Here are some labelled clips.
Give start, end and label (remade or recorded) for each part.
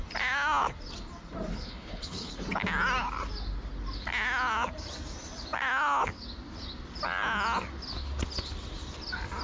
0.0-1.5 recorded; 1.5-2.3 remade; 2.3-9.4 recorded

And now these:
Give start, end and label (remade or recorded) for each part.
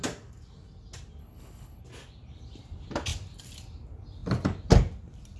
0.0-1.2 recorded; 1.2-1.8 remade; 1.8-5.4 recorded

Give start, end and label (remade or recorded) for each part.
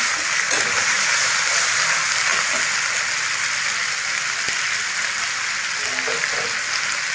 0.0-7.1 recorded